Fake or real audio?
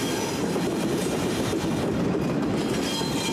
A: real